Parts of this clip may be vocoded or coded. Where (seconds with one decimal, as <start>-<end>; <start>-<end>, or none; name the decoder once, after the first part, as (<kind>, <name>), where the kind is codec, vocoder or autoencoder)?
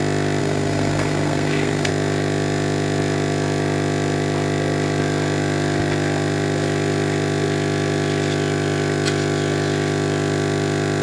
0.4-1.9 (codec, SNAC)